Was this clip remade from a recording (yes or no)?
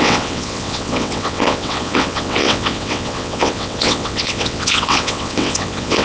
yes